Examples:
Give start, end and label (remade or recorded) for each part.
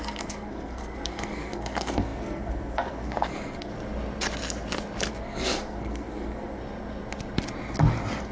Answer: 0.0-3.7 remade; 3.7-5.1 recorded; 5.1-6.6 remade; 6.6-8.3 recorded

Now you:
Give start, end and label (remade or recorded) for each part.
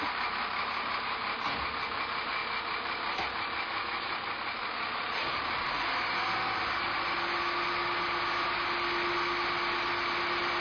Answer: 0.0-10.6 recorded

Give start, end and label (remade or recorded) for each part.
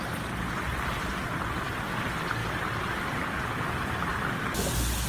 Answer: 0.0-5.1 recorded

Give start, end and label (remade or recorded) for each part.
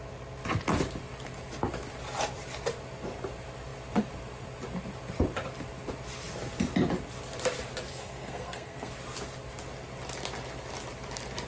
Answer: 0.0-7.9 recorded; 7.9-8.9 remade; 8.9-11.5 recorded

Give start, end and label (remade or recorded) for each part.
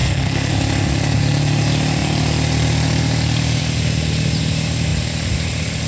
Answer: 0.0-0.5 remade; 0.5-5.9 recorded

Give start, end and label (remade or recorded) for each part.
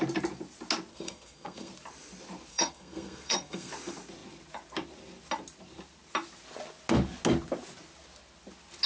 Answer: 0.0-0.9 recorded; 0.9-1.7 remade; 1.7-2.5 recorded; 2.5-3.7 remade; 3.7-8.9 recorded